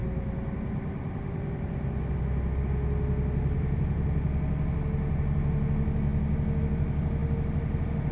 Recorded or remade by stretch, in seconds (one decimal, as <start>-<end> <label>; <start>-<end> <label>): 0.0-8.1 recorded